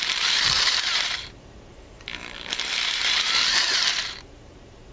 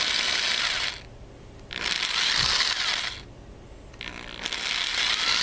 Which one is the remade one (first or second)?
first